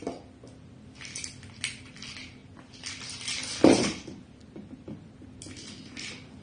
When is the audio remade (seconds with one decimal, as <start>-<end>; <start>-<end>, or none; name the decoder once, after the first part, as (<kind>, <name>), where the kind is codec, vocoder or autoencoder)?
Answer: none